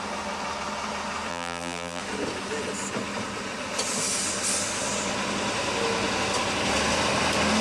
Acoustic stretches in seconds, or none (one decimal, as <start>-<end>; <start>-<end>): 0.0-1.3; 2.0-7.6